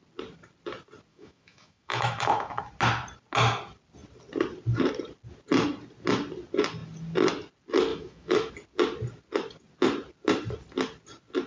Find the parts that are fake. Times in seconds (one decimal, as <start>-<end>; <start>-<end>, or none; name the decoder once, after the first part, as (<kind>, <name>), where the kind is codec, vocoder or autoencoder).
1.1-2.6 (autoencoder, DAC-VAE); 7.9-8.5